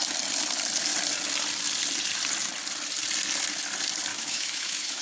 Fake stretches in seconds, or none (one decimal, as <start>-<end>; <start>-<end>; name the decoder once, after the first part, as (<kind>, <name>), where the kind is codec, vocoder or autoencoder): 4.1-5.0 (autoencoder, DAC-VAE)